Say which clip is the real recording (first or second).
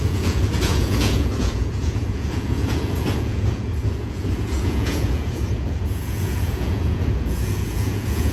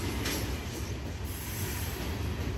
second